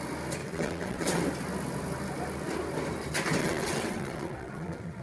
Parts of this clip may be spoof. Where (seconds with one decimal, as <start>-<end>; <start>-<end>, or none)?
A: 0.4-1.2; 3.4-5.0